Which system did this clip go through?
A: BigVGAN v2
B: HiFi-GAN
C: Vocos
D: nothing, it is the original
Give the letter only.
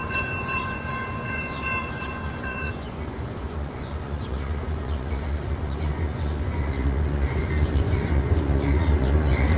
C